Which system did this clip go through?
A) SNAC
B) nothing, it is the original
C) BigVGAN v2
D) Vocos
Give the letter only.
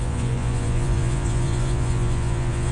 D